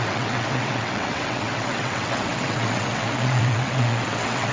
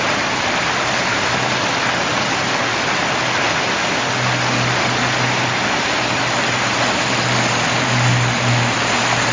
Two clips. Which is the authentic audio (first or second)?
second